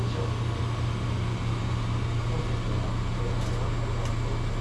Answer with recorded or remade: recorded